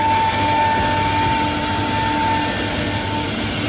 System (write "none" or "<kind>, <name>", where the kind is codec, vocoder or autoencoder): none